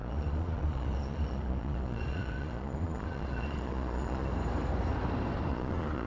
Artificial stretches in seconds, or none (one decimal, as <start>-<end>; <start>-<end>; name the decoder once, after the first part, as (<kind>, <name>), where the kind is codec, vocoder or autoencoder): 0.0-4.3 (vocoder, Vocos); 5.5-6.1